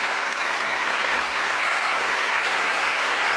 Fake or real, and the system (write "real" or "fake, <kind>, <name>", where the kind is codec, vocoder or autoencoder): fake, codec, SNAC